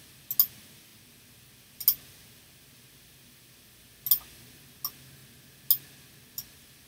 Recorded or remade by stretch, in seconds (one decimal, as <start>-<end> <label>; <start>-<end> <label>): 0.0-6.9 recorded